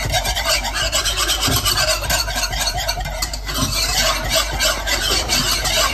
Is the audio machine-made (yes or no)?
yes